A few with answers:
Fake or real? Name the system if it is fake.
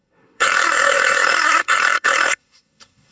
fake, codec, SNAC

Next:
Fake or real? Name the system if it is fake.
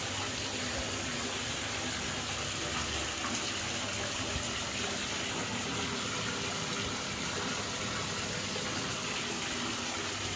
real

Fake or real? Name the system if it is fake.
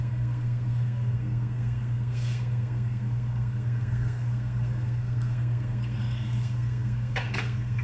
fake, codec, SNAC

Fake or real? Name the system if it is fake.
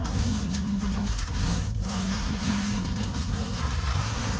fake, codec, SNAC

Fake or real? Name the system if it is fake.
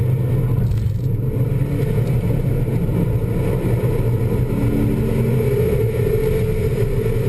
real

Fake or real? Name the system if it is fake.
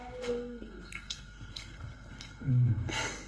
fake, codec, SNAC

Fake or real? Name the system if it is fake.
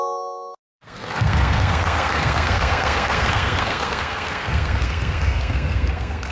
fake, codec, SNAC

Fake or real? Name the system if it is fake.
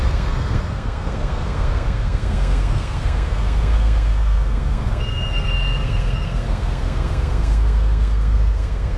fake, codec, SNAC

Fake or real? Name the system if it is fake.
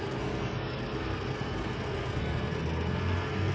fake, codec, SNAC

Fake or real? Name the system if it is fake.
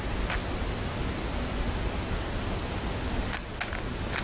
real